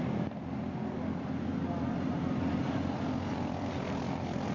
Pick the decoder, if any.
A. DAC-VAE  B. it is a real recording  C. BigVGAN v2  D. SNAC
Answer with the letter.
B